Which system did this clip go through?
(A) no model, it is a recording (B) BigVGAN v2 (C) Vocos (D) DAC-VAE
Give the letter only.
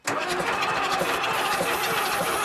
A